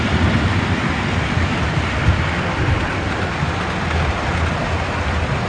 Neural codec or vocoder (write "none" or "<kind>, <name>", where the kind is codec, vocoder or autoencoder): none